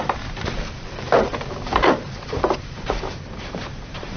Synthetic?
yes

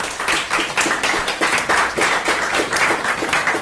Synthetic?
yes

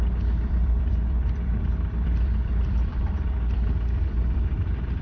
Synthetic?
yes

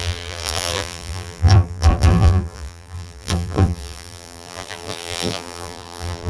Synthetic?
yes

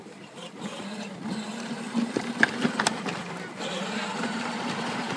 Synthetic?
yes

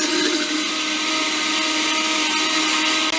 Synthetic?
no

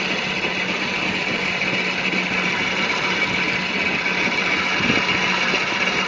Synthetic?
no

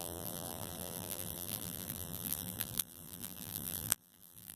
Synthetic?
yes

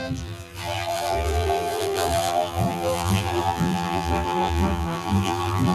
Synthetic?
yes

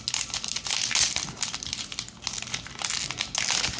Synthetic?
no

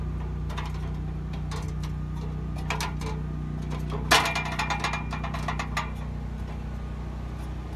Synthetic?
no